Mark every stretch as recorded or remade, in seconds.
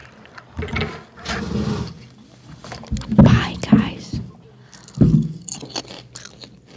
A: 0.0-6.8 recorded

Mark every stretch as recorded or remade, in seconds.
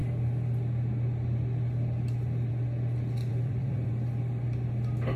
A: 0.0-3.3 recorded; 3.3-3.9 remade; 3.9-5.2 recorded